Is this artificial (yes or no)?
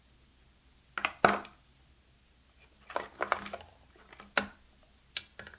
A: no